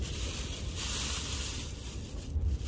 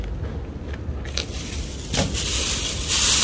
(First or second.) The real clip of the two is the second